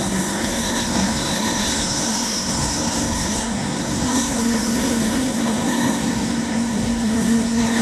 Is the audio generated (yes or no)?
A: yes